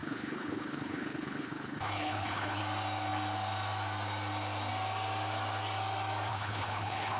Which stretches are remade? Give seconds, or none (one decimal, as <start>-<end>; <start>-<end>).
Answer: 0.0-2.6; 6.3-7.2